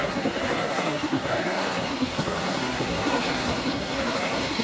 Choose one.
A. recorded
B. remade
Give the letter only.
B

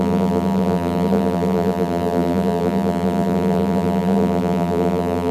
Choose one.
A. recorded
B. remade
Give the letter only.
B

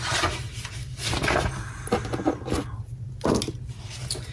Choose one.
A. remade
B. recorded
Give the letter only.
B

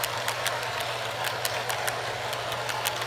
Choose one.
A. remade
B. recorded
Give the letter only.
B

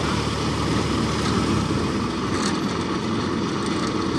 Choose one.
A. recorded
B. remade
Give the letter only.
A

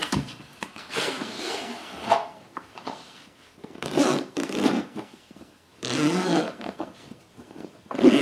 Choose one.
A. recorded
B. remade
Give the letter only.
B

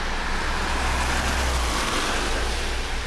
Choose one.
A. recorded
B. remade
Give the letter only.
A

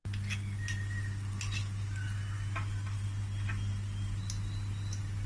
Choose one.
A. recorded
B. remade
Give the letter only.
A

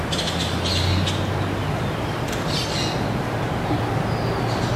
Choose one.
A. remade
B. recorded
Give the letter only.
B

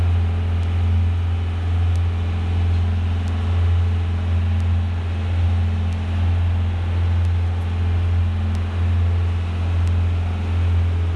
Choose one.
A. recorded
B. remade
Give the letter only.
A